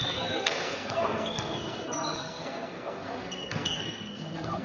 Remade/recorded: remade